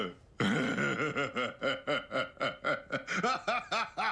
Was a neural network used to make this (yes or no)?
no